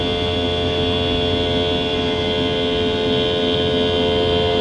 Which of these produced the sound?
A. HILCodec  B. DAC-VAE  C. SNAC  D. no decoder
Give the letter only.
D